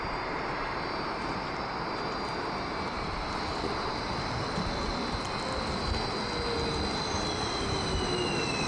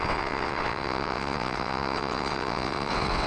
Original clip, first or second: first